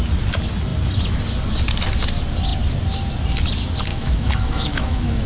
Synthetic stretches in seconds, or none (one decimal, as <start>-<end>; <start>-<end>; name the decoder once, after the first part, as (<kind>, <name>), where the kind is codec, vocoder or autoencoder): 3.9-5.3 (autoencoder, DAC-VAE)